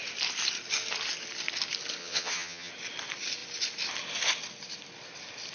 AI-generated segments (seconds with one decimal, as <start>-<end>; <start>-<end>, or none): 2.0-2.7